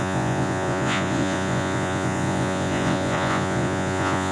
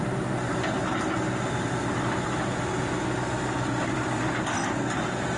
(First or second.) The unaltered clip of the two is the second